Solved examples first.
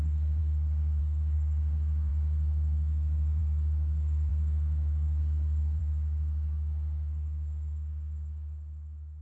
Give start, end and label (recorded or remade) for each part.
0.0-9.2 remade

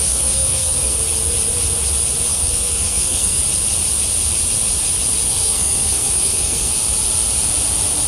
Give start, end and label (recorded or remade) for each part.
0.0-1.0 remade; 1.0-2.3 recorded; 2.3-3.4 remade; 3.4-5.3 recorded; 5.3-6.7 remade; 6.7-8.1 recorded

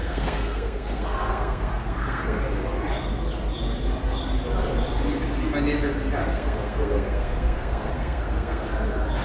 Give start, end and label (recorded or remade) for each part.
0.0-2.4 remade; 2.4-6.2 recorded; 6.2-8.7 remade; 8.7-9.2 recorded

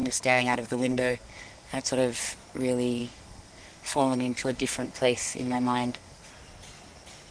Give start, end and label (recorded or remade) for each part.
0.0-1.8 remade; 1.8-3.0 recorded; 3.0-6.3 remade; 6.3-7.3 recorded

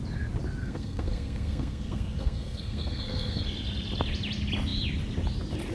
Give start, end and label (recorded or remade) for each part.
0.0-0.6 recorded; 0.6-3.4 remade; 3.4-5.7 recorded